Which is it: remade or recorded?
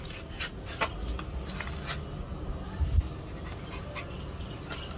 recorded